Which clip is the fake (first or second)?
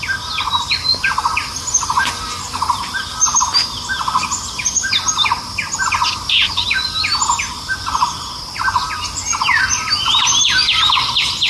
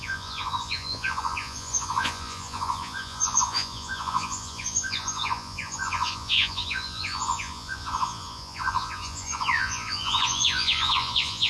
second